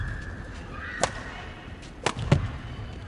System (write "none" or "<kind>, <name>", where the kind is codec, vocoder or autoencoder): none